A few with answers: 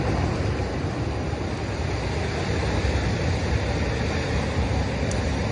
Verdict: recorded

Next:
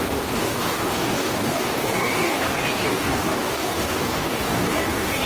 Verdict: remade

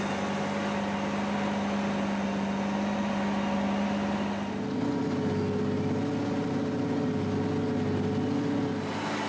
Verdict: recorded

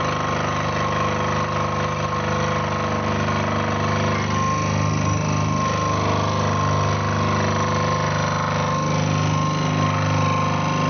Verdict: recorded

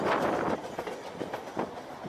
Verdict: recorded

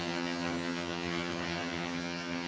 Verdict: remade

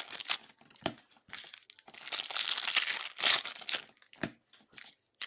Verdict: recorded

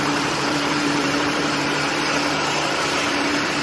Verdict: remade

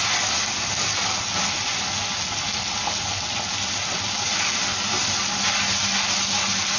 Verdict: recorded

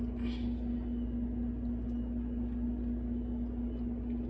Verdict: recorded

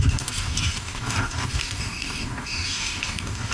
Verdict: remade